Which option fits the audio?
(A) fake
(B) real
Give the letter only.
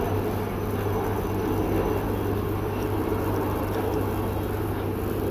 B